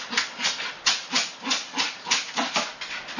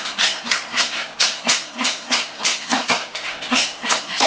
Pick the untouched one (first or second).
first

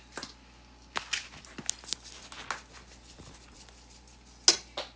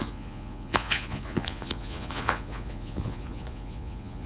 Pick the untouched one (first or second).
first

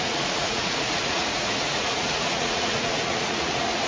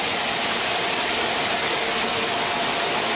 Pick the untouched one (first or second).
second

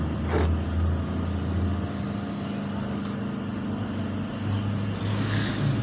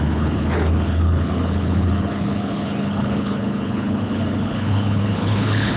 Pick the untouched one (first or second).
first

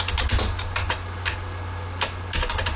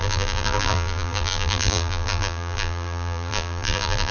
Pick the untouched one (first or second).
first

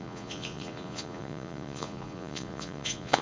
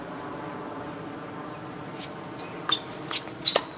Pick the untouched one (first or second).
second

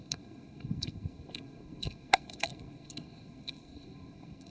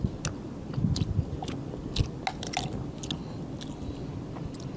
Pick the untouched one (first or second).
second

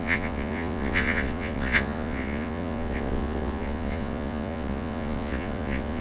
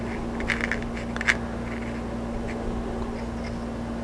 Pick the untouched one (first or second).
second